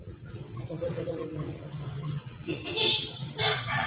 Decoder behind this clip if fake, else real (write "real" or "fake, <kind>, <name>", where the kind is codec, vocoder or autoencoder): fake, vocoder, WaveNeXt